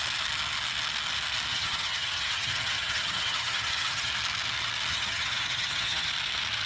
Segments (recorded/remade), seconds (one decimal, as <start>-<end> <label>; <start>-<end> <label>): 0.0-1.5 recorded; 1.5-4.1 remade; 4.1-4.9 recorded; 4.9-6.1 remade; 6.1-6.7 recorded